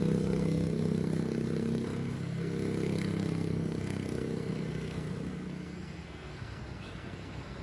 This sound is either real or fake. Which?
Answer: fake